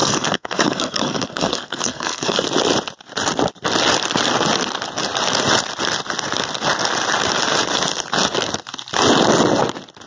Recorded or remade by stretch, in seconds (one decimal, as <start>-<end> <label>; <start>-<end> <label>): 0.0-2.4 remade; 2.4-10.1 recorded